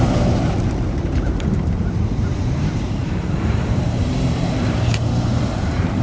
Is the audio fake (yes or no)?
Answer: yes